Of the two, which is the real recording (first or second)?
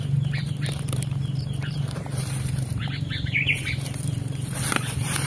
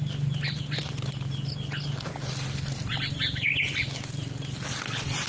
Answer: second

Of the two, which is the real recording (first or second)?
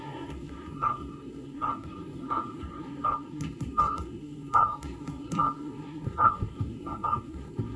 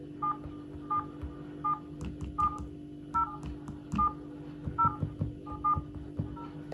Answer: second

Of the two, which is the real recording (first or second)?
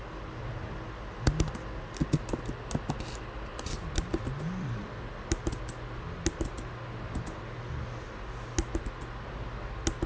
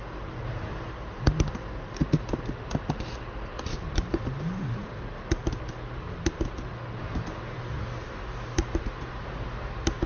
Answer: first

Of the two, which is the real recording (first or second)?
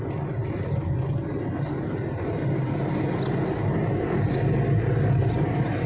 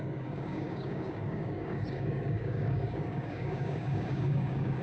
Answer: first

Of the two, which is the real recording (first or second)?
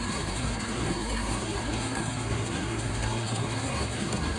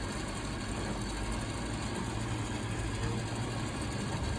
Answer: second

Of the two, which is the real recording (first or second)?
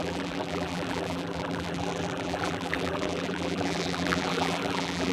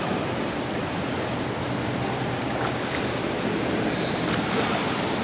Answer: second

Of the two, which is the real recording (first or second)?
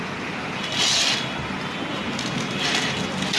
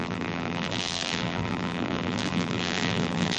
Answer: first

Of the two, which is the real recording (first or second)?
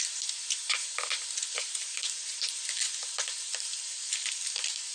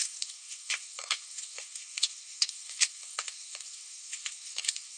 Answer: first